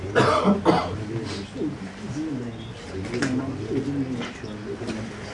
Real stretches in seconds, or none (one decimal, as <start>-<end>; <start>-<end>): 0.0-5.3